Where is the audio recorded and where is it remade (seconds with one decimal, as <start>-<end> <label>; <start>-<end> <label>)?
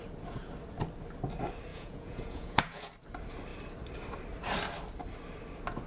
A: 0.0-1.7 recorded; 1.7-2.9 remade; 2.9-5.9 recorded